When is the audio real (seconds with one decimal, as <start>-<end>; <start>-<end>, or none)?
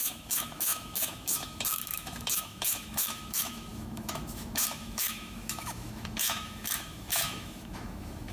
none